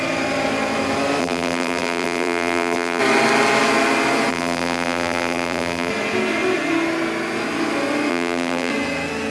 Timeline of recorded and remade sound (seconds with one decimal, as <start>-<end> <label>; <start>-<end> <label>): 0.0-1.2 recorded; 1.2-3.0 remade; 3.0-4.3 recorded; 4.3-5.9 remade; 5.9-8.1 recorded; 8.1-8.7 remade; 8.7-9.3 recorded